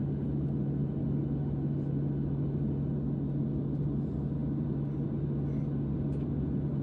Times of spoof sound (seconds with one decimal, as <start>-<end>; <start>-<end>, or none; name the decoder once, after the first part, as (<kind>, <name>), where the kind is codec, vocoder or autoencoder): none